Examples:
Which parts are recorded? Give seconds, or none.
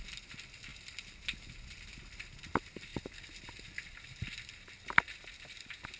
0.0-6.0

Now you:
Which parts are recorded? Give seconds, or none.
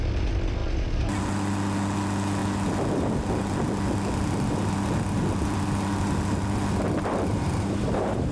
0.0-7.3